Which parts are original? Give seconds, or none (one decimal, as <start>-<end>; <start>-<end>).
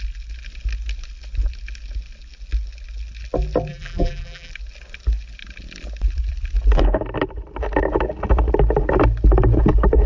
0.0-3.7; 4.5-10.1